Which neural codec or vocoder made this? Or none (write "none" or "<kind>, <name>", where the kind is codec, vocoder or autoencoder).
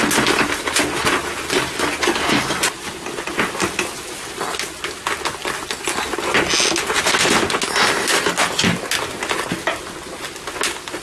none